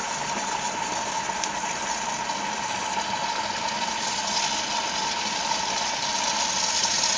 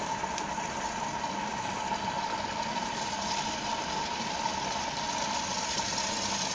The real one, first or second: first